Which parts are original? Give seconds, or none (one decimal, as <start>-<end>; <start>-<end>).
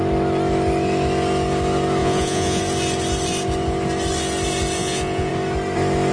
0.0-2.0; 2.6-4.8; 5.3-6.1